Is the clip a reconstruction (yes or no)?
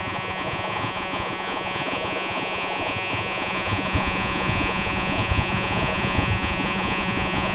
yes